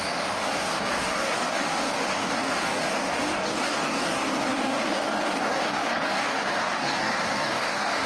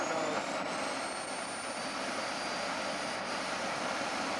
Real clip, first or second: second